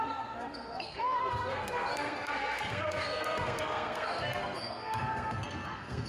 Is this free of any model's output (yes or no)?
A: no